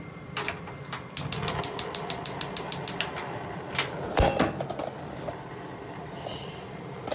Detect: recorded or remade recorded